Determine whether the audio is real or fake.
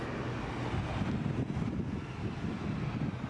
real